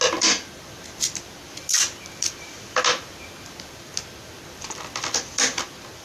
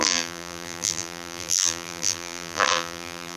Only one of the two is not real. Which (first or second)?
second